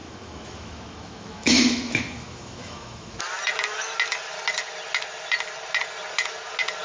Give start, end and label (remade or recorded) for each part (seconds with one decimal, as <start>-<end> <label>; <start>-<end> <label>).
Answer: 0.0-3.2 remade; 3.2-6.8 recorded